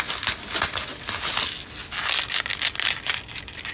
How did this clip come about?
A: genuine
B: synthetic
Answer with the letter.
A